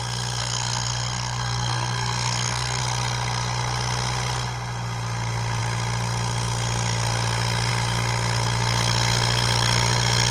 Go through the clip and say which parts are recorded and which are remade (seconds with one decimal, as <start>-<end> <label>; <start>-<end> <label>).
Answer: 0.0-0.4 recorded; 0.4-2.8 remade; 2.8-10.3 recorded